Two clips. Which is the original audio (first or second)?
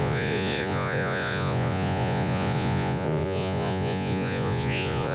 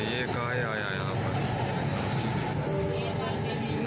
second